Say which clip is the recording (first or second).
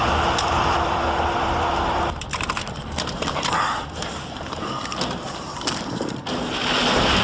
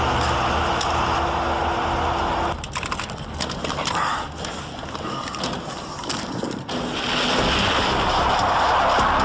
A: second